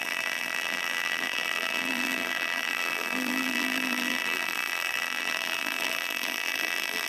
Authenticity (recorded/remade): remade